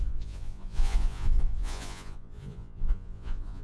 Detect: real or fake fake